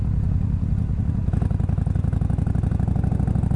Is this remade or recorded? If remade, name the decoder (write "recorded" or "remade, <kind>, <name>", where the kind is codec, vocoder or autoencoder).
recorded